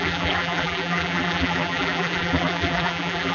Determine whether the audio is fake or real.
fake